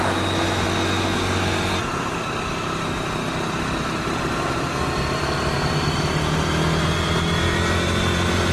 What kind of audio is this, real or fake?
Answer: real